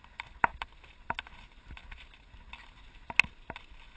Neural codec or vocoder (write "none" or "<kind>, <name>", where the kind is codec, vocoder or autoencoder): none